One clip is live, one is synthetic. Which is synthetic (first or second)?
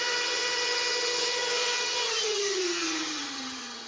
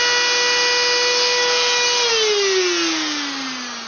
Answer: first